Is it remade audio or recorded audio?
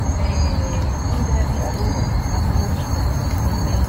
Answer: recorded